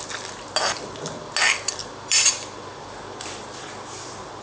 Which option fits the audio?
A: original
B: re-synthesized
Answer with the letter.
A